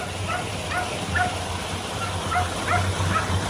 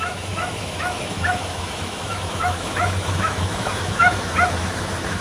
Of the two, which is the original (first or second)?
first